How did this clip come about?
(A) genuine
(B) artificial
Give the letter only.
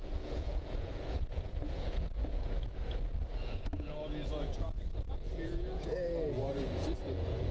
B